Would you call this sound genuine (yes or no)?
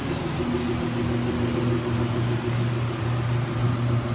yes